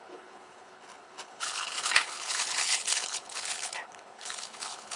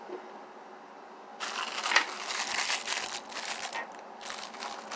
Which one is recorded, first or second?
second